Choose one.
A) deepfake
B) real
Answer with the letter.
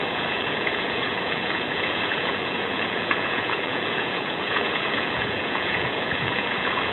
A